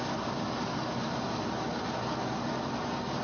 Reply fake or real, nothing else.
real